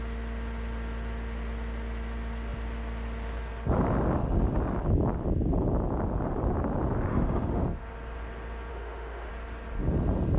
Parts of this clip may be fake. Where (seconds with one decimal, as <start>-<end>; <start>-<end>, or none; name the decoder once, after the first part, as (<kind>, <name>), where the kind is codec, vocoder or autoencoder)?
7.1-7.6 (autoencoder, DAC-VAE); 8.7-9.3